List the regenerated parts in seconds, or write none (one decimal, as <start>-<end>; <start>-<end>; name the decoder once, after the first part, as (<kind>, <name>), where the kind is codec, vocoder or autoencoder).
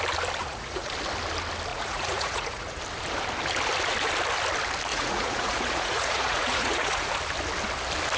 0.4-0.9 (vocoder, Vocos); 1.7-2.8; 4.9-7.1